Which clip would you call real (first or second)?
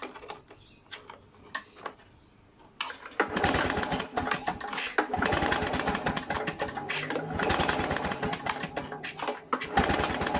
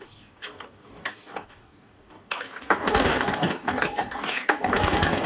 first